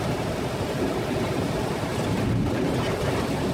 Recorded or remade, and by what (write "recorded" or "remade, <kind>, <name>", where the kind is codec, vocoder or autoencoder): remade, vocoder, BigVGAN v2